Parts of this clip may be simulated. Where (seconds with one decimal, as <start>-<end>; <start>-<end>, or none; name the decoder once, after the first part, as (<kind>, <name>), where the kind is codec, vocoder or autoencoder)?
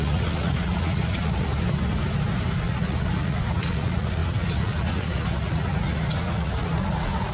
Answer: 0.0-1.5 (vocoder, Vocos); 2.6-7.3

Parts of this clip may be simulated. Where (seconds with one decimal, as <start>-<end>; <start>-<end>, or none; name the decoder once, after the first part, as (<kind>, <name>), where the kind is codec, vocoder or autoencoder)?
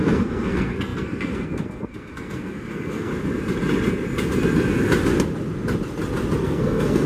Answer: 0.0-3.1 (codec, SNAC); 6.4-7.1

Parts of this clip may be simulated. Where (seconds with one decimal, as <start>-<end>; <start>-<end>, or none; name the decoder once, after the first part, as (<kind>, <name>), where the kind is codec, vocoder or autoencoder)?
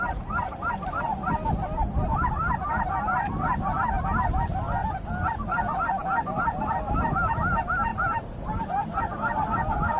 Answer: 4.8-6.7 (vocoder, BigVGAN v2)